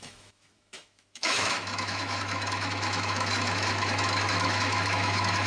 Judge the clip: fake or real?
fake